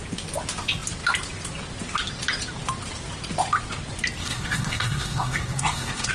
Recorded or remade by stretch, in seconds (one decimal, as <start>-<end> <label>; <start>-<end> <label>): 0.0-4.2 recorded; 4.2-6.1 remade